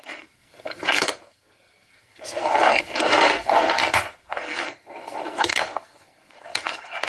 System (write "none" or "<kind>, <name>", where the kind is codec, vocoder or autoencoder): codec, SNAC